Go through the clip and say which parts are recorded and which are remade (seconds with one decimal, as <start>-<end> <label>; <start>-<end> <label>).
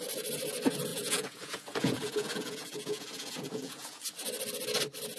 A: 0.0-0.9 recorded; 0.9-4.0 remade; 4.0-5.2 recorded